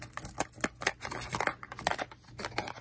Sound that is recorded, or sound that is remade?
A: recorded